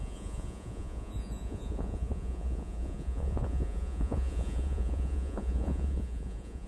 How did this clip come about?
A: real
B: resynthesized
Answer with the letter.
B